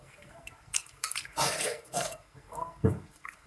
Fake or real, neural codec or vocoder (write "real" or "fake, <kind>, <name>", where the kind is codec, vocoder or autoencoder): fake, codec, SNAC